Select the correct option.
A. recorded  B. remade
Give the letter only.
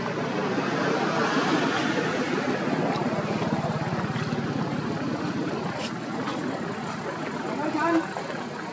A